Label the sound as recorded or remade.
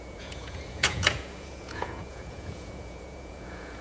remade